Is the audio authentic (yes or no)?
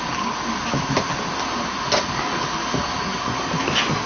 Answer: yes